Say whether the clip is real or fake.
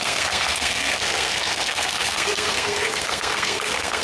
fake